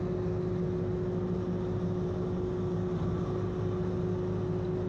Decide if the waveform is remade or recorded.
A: recorded